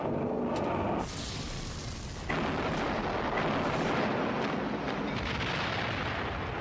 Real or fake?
real